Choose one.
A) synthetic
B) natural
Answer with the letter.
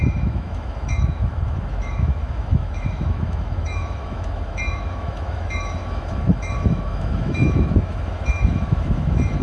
A